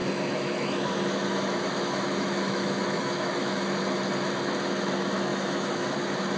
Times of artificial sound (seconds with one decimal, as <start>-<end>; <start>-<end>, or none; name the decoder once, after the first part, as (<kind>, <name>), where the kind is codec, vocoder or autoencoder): 0.0-3.8 (autoencoder, DAC-VAE); 5.3-6.0